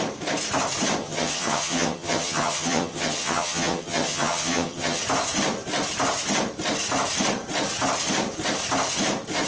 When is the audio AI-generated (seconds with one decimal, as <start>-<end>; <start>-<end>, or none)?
1.0-5.0